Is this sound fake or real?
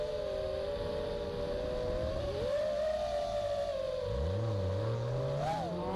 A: real